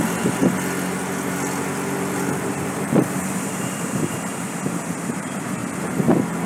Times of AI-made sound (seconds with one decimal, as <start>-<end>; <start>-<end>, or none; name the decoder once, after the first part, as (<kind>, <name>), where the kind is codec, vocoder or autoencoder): 0.0-0.4 (vocoder, BigVGAN v2); 2.5-4.3; 5.0-5.6